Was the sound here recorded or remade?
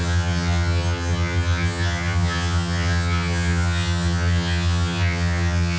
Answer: remade